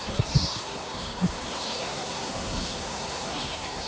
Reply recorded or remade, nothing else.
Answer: remade